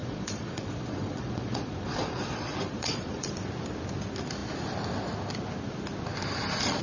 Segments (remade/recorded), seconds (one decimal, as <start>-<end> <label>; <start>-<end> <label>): 0.0-3.3 remade; 3.3-6.8 recorded